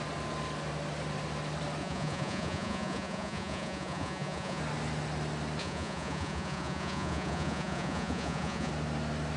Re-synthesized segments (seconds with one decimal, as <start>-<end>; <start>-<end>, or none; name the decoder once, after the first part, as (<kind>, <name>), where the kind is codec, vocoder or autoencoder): 1.8-4.6 (vocoder, Vocos); 5.6-8.7